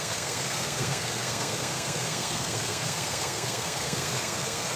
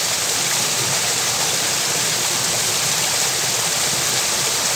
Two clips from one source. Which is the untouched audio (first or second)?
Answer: second